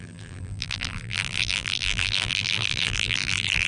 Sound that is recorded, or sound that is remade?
remade